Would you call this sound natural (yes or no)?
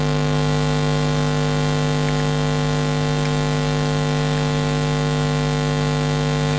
yes